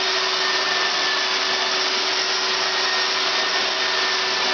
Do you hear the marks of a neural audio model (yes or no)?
no